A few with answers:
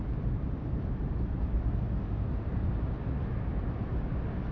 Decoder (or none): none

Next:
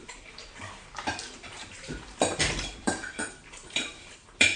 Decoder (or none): vocoder, BigVGAN v2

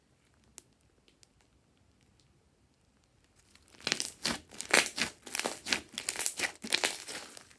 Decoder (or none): none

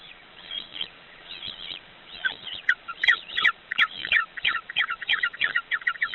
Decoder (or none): vocoder, Vocos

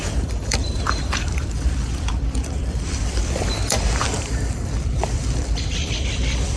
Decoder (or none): vocoder, BigVGAN v2